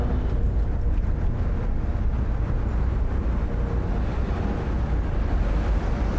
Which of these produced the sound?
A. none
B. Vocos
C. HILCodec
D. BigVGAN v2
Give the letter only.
A